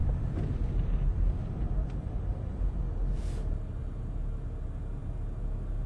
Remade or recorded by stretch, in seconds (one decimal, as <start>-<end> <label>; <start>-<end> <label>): 0.0-2.8 remade; 2.8-5.9 recorded